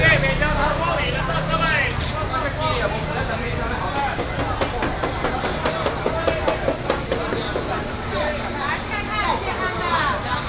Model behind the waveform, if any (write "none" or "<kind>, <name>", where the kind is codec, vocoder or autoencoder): none